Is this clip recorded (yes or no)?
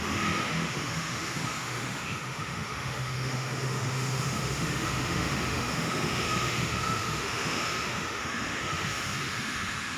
no